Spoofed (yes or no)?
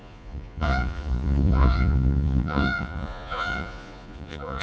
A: yes